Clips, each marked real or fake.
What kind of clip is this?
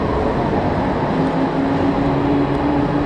real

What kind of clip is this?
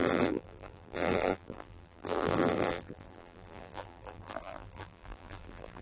fake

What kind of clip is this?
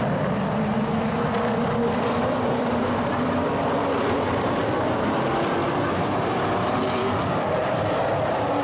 fake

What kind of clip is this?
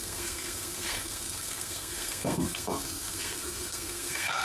fake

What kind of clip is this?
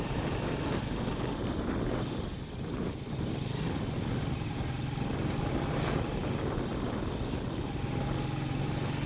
real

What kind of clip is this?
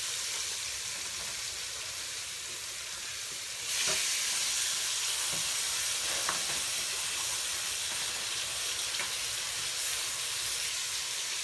real